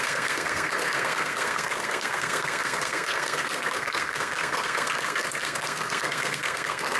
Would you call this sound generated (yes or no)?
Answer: yes